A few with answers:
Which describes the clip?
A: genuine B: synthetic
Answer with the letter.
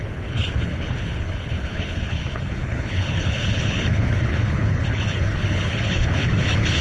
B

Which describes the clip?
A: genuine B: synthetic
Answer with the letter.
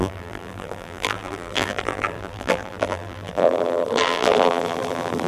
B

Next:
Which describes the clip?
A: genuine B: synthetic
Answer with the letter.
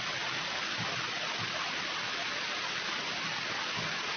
A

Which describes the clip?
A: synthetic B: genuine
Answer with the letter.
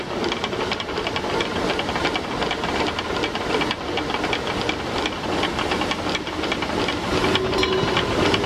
B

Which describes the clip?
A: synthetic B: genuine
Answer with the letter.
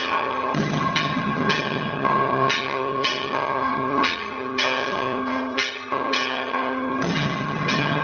A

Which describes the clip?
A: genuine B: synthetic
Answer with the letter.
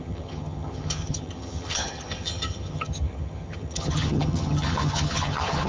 B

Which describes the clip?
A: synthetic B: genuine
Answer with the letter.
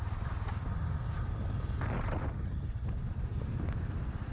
B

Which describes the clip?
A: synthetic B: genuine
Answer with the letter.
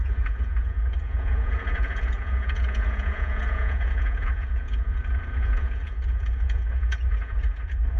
A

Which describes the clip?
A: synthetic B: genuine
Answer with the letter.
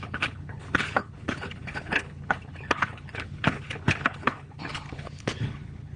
A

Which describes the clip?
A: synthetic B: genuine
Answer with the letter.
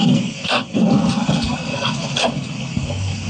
A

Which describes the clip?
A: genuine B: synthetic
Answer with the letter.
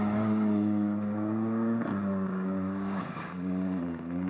B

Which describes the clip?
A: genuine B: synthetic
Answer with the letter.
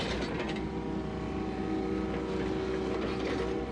A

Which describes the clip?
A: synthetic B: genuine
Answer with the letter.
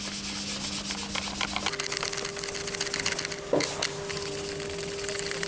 B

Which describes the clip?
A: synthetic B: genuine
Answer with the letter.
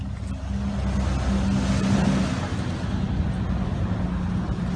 B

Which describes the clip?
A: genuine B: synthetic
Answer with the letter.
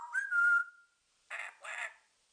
A